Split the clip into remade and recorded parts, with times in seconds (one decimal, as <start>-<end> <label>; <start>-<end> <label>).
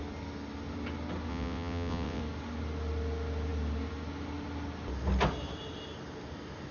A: 0.0-1.3 recorded; 1.3-2.2 remade; 2.2-6.7 recorded